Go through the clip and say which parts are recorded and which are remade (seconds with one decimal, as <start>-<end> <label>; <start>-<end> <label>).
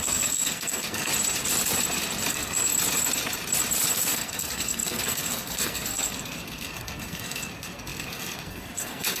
0.0-1.1 remade; 1.1-2.3 recorded; 2.3-2.7 remade; 2.7-3.9 recorded; 3.9-9.2 remade